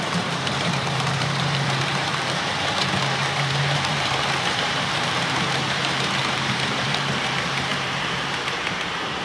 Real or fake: fake